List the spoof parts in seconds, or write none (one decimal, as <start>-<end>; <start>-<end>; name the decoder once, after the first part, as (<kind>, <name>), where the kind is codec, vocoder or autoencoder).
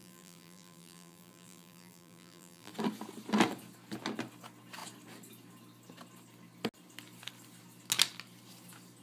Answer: 0.0-2.7 (vocoder, BigVGAN v2)